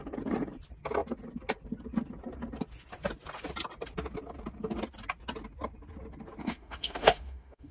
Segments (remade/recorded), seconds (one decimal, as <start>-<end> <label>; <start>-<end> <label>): 0.0-6.4 recorded; 6.4-7.7 remade